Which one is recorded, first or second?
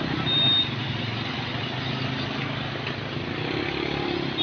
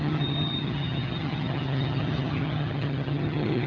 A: first